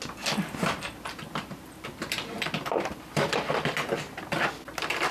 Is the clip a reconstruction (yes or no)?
no